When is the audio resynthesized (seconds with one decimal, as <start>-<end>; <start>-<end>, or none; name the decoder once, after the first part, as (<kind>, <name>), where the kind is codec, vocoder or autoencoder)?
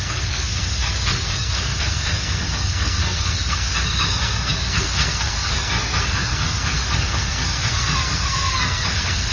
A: 0.0-9.3 (codec, SNAC)